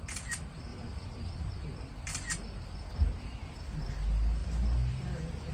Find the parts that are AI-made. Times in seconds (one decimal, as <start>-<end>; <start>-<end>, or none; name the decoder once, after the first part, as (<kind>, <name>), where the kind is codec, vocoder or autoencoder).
0.7-1.5 (vocoder, BigVGAN v2)